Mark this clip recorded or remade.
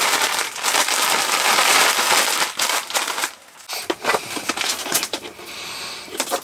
recorded